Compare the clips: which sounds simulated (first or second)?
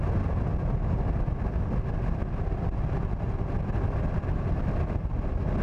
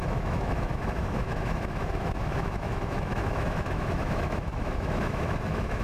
second